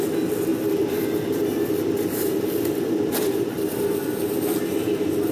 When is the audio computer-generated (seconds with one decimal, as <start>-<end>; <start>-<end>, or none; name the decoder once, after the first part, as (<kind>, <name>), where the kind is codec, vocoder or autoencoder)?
0.5-3.6 (vocoder, BigVGAN v2)